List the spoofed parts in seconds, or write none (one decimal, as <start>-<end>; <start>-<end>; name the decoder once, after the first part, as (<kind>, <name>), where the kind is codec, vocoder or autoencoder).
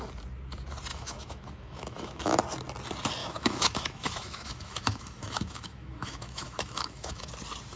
0.9-2.4 (autoencoder, DAC-VAE); 3.2-7.3